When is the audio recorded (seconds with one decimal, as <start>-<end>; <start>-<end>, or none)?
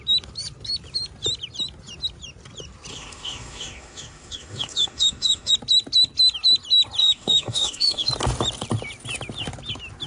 0.0-2.9; 5.5-7.0; 8.1-10.1